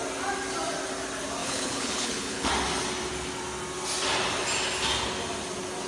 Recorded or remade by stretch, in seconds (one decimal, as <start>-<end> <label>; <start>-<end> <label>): 0.0-1.4 recorded; 1.4-2.5 remade; 2.5-5.9 recorded